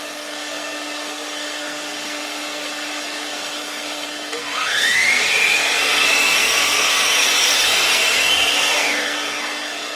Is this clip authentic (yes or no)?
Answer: no